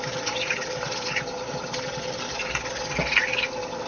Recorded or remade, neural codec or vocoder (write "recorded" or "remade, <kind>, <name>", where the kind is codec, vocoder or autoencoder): recorded